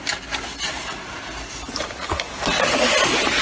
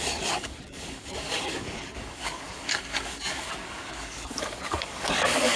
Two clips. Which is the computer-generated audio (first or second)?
second